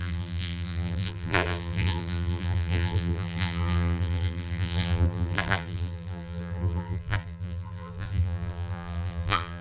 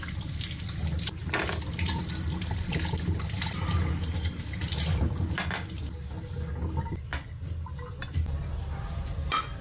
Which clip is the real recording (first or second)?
second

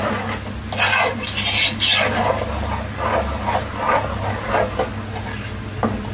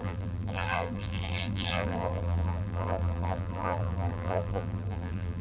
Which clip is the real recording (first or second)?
first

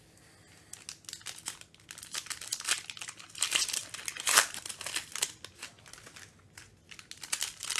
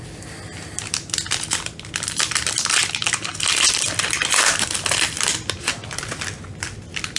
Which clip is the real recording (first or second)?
first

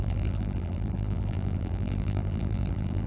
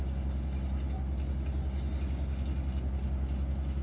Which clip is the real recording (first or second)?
second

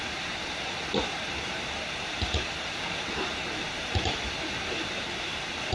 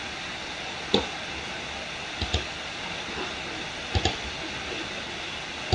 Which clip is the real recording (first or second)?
second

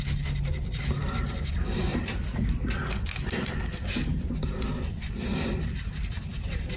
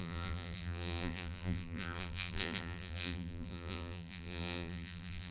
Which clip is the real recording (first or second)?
first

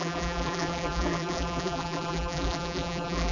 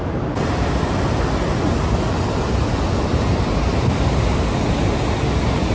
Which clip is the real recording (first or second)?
second